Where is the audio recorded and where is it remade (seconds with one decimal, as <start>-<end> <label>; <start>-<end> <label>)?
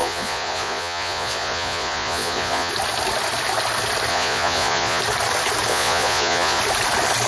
0.0-2.7 remade; 2.7-4.1 recorded; 4.1-5.0 remade; 5.0-5.7 recorded; 5.7-6.6 remade; 6.6-7.3 recorded